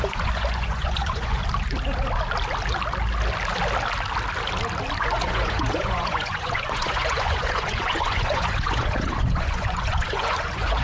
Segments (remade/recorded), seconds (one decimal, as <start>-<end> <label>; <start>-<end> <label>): 0.0-1.4 remade; 1.4-5.0 recorded; 5.0-10.8 remade